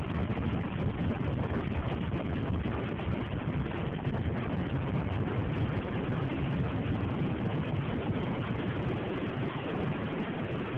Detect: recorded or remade recorded